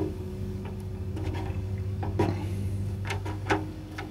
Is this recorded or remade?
remade